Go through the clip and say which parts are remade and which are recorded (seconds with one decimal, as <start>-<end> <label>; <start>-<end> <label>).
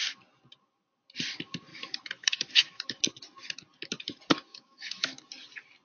0.0-1.7 recorded; 1.7-3.0 remade; 3.0-4.5 recorded; 4.5-5.3 remade; 5.3-5.8 recorded